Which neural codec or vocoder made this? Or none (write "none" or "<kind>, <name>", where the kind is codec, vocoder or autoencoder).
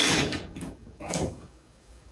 codec, DAC